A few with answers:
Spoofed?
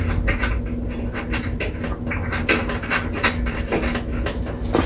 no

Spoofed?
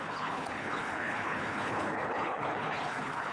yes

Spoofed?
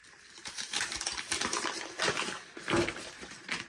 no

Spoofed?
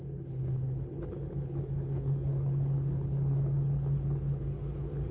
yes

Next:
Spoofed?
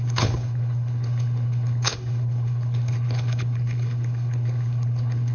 yes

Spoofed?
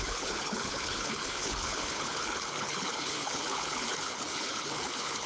yes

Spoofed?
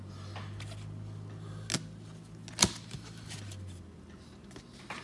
no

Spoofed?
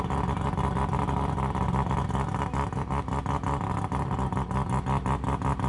no